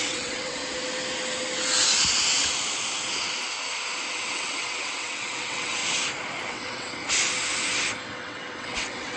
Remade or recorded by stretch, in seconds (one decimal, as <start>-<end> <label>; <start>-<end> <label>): 0.0-0.6 remade; 0.6-4.1 recorded; 4.1-5.8 remade; 5.8-6.5 recorded; 6.5-7.0 remade; 7.0-8.1 recorded; 8.1-9.2 remade